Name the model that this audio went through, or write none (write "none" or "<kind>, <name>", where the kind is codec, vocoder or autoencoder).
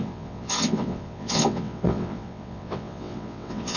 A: vocoder, WaveNeXt